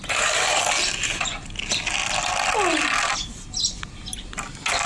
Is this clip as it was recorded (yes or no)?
yes